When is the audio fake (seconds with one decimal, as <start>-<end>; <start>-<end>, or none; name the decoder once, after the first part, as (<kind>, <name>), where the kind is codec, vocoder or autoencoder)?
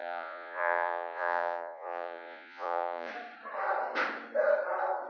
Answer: 0.0-3.1 (vocoder, Vocos)